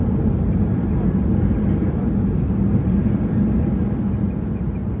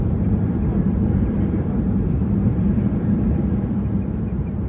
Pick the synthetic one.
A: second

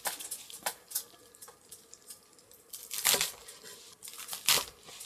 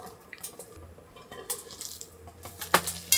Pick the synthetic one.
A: first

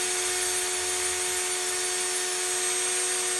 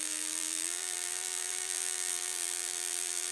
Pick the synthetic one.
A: second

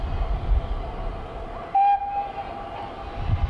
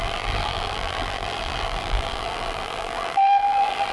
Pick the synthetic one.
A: second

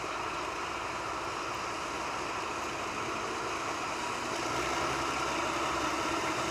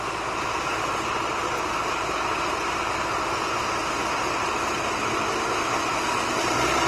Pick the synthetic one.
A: first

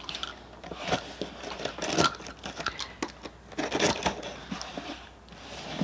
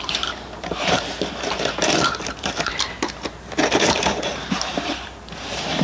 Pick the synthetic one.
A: second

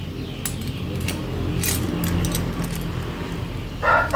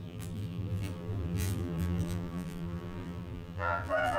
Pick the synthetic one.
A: second